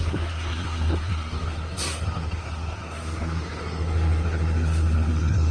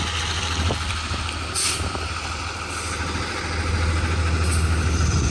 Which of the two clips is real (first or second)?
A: second